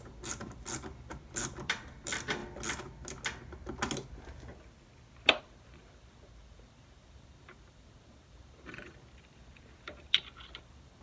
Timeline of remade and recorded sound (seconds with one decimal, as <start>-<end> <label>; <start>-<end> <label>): 0.0-2.4 remade; 2.4-5.4 recorded; 5.4-11.0 remade